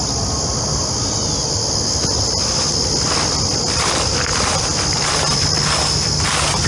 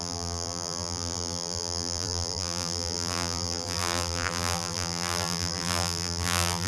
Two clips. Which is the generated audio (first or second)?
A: second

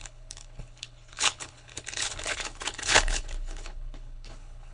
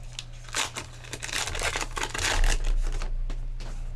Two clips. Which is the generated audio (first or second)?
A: first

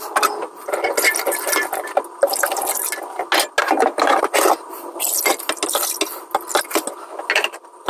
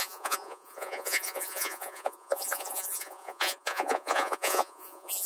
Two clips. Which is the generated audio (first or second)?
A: second